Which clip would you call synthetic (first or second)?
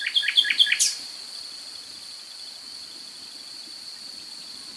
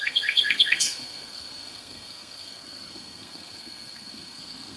second